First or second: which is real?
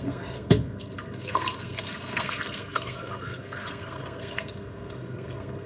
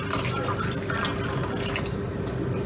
second